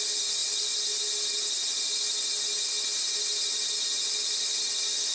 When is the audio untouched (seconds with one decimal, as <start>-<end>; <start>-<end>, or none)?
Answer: 0.0-5.1